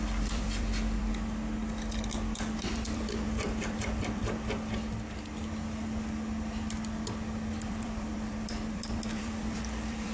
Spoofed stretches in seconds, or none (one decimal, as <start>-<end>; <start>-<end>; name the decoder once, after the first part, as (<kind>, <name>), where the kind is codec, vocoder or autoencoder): 0.0-1.1 (vocoder, BigVGAN v2); 2.6-4.2; 7.5-10.1